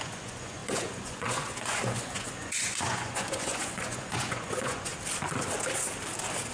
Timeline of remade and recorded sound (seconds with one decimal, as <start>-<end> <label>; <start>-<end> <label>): 0.0-4.9 remade; 4.9-6.5 recorded